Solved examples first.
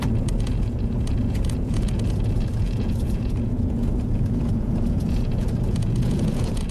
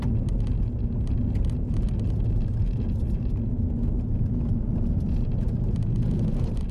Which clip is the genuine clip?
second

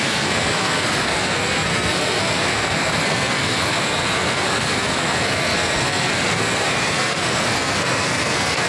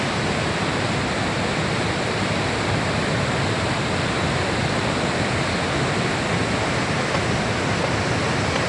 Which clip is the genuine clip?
second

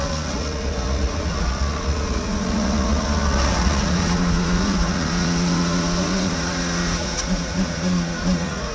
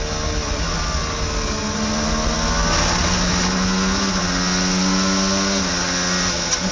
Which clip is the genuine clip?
second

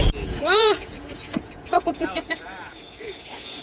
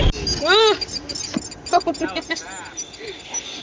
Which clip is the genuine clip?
second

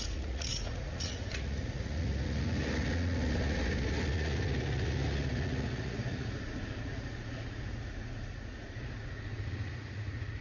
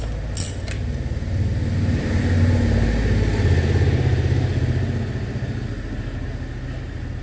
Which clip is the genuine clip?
second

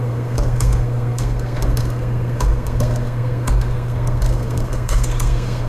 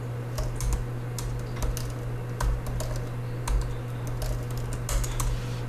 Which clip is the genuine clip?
second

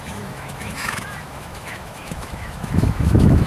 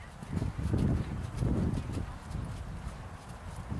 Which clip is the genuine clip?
second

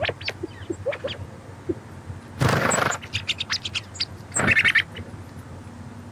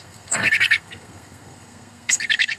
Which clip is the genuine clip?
first